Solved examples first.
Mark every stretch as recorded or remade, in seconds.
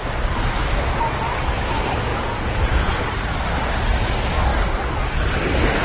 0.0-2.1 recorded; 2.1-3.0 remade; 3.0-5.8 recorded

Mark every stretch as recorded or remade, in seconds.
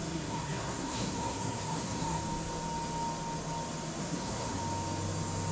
0.0-2.2 remade; 2.2-4.0 recorded; 4.0-4.6 remade; 4.6-5.5 recorded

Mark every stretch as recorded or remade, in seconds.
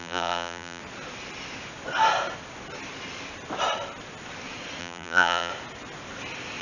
0.0-0.8 remade; 0.8-4.8 recorded; 4.8-5.5 remade; 5.5-6.6 recorded